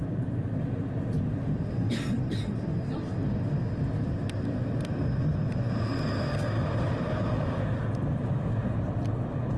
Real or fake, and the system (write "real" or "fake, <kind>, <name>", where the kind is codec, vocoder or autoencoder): real